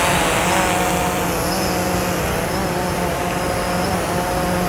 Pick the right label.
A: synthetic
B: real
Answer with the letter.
B